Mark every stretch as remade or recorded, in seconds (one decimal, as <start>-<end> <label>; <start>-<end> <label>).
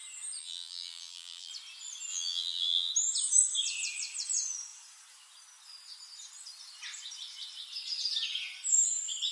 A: 0.0-0.4 recorded; 0.4-1.5 remade; 1.5-2.1 recorded; 2.1-2.9 remade; 2.9-9.3 recorded